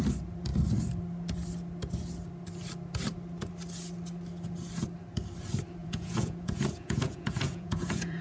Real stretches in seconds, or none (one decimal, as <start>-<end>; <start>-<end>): 0.0-5.8